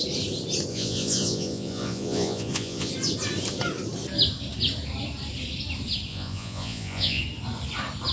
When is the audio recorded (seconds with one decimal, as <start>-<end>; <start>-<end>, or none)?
0.0-0.7; 2.9-6.1; 7.2-8.1